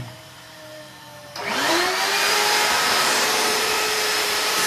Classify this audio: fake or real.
fake